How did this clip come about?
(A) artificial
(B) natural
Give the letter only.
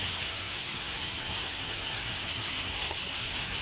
A